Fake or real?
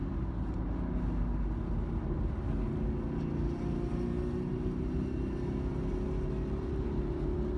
real